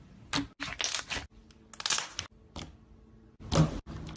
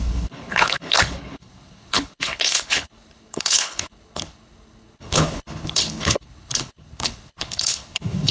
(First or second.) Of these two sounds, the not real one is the second